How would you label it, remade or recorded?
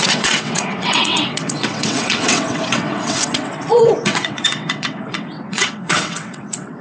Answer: remade